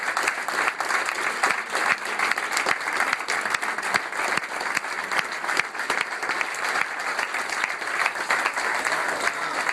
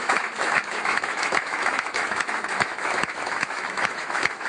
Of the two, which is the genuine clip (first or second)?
first